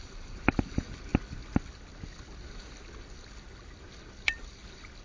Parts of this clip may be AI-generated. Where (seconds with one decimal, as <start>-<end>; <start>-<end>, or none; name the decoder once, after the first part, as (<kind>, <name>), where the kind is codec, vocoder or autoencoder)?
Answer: none